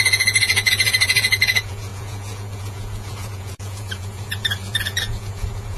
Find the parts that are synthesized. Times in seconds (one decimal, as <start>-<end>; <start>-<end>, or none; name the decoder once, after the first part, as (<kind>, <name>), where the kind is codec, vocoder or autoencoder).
0.0-5.8 (vocoder, Vocos)